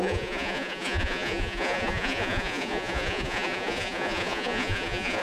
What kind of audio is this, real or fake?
fake